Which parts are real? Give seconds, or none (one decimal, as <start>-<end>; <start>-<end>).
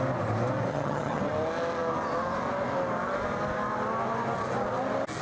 0.0-0.7; 1.2-5.2